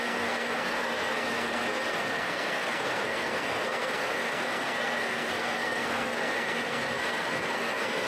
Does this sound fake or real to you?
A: fake